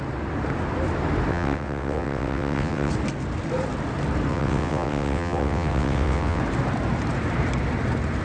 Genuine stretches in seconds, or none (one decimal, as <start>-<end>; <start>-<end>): 0.0-1.3; 2.9-4.3; 6.4-8.2

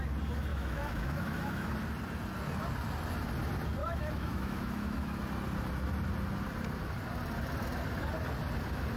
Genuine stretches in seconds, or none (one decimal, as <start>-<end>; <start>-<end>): 0.0-0.5; 1.7-3.8; 5.2-9.0